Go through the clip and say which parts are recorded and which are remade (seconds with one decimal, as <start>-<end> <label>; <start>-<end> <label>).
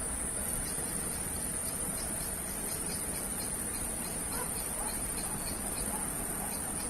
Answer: 0.0-0.5 remade; 0.5-1.6 recorded; 1.6-5.7 remade; 5.7-6.9 recorded